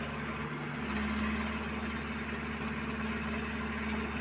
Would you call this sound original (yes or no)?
yes